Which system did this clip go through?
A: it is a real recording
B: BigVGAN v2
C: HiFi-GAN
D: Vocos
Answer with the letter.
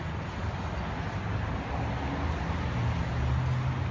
A